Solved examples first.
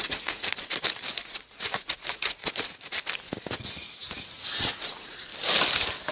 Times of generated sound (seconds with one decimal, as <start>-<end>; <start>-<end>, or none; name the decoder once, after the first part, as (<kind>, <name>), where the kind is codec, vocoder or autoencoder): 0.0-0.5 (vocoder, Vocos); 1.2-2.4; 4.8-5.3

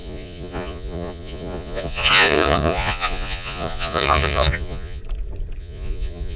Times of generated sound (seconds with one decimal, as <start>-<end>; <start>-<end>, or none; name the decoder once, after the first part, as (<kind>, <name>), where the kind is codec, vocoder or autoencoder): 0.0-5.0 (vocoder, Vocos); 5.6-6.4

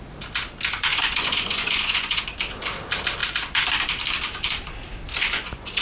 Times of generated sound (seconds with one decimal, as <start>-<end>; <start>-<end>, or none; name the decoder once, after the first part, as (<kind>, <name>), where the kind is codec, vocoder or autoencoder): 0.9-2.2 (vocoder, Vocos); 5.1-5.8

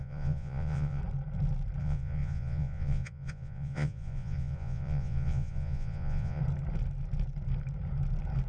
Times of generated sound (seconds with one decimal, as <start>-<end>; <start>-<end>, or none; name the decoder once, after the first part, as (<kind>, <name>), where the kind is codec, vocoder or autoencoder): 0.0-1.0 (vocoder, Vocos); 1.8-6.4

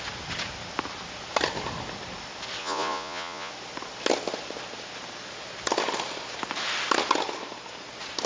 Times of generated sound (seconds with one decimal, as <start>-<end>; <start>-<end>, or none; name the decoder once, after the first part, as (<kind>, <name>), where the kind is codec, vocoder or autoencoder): 2.6-3.5 (vocoder, Vocos)